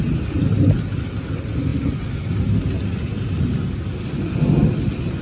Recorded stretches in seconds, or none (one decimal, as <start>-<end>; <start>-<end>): 0.0-5.2